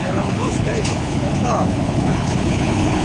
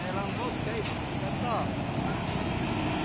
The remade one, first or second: first